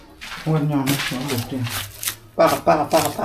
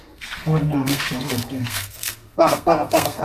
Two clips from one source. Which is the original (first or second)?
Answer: first